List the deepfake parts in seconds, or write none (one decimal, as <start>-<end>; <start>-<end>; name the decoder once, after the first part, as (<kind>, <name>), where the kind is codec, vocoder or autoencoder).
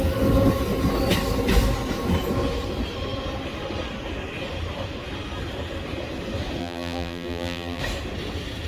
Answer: 6.6-7.8 (vocoder, BigVGAN v2)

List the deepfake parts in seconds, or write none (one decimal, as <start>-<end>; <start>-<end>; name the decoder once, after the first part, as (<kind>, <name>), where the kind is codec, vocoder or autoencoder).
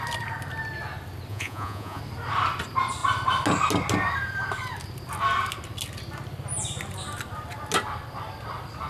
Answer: 1.3-2.0 (vocoder, Vocos)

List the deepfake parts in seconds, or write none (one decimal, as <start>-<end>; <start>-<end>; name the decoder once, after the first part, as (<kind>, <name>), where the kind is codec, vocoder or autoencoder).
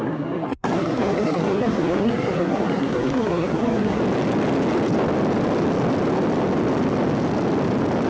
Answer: 0.0-4.0 (codec, SNAC)